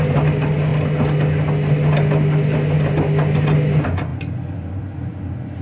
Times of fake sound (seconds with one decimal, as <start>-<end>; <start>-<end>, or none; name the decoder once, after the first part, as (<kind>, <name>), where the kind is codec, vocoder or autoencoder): none